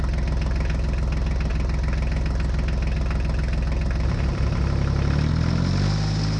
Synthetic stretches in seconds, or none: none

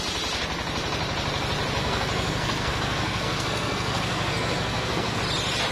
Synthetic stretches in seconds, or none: 1.8-5.2

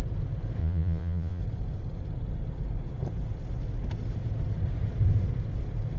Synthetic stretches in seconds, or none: 0.6-1.4

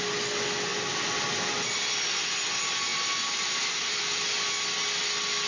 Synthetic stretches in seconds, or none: 2.9-4.5

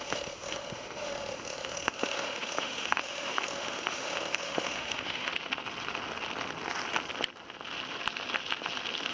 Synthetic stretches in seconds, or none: 0.0-5.3

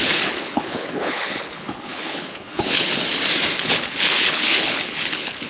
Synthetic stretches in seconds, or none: 0.0-2.9; 3.5-5.5

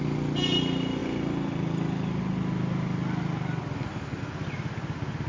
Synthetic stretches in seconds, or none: none

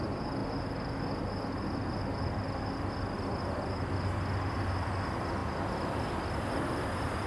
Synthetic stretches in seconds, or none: none